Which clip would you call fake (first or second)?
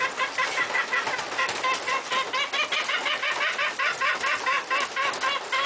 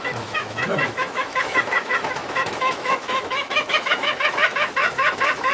second